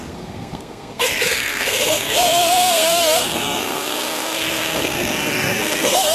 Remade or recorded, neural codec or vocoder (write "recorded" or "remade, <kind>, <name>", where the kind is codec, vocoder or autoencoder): remade, codec, SNAC